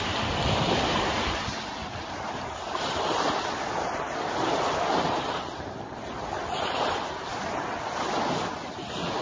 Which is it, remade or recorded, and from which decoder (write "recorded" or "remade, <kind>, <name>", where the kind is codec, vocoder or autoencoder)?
recorded